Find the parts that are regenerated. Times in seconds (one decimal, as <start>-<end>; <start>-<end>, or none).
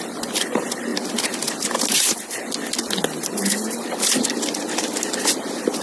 none